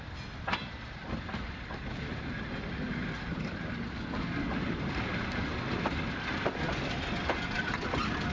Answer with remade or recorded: recorded